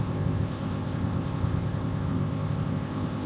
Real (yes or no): no